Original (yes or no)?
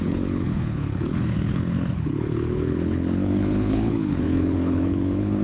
no